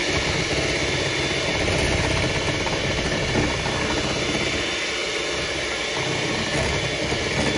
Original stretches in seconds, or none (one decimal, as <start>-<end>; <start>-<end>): 0.0-7.6